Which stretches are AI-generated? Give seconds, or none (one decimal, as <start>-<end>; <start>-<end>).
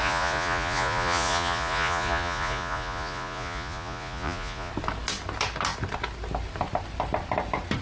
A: 0.0-4.7